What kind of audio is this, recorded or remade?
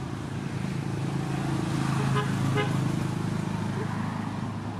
recorded